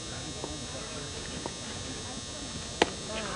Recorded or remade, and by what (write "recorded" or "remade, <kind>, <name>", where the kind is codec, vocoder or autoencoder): recorded